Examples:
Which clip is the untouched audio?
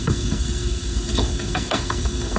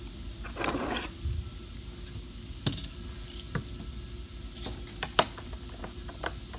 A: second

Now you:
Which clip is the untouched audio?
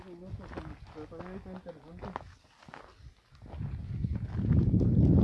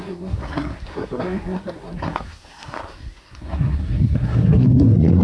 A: first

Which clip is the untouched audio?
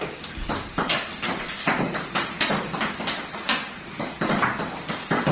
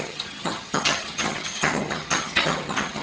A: first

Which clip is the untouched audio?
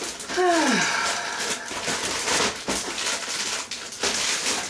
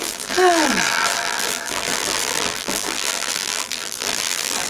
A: first